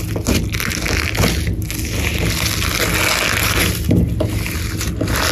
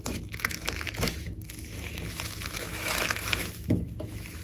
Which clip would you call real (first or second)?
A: first